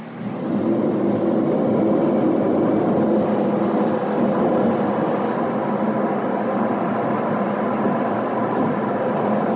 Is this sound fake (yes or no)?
no